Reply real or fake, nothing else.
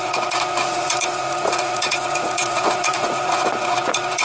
fake